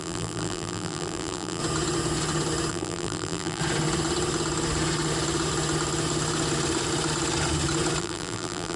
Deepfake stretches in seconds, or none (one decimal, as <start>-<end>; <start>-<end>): 0.0-1.6; 2.7-3.6; 8.0-8.8